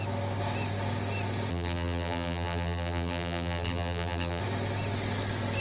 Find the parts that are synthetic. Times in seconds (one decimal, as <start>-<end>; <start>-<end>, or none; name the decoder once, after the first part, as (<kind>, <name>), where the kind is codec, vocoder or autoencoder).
1.5-4.4 (vocoder, BigVGAN v2)